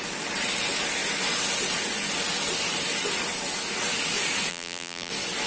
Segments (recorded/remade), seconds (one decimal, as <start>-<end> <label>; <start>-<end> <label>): 0.0-4.5 recorded; 4.5-5.1 remade; 5.1-5.5 recorded